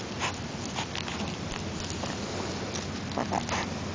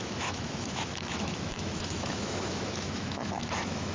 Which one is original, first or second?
first